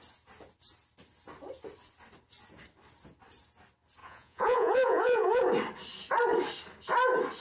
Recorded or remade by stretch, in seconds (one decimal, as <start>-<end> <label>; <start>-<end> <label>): 0.0-4.0 recorded; 4.0-5.4 remade; 5.4-7.4 recorded